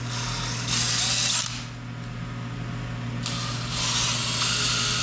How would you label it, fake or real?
real